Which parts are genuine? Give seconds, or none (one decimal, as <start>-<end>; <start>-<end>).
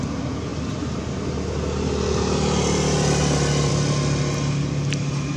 0.0-5.4